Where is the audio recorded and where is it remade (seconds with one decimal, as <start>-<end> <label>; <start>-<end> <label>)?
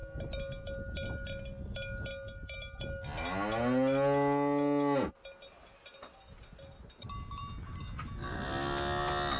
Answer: 0.0-9.4 recorded